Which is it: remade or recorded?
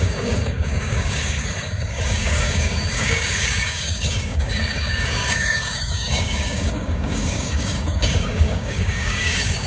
remade